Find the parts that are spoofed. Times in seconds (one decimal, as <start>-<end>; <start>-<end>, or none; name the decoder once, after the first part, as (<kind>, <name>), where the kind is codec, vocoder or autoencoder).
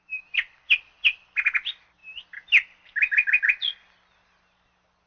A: none